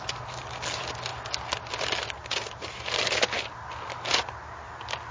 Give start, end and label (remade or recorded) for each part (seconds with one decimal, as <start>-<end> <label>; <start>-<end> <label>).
0.0-5.1 recorded